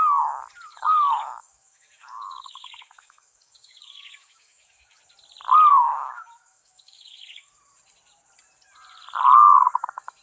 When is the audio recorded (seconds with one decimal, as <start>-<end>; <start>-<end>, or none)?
0.0-0.7; 5.0-5.7; 7.5-10.2